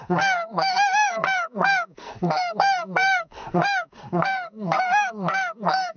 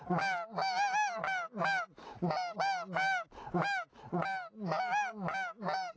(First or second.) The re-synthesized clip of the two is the first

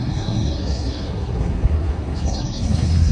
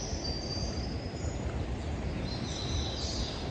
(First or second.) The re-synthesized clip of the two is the first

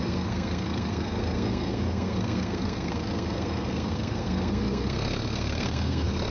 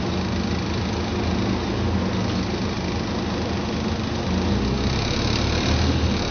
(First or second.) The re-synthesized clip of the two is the first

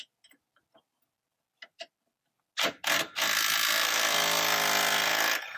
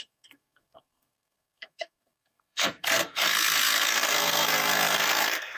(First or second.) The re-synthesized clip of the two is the second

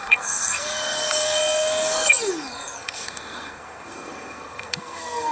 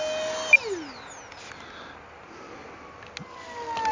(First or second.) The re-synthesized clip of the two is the first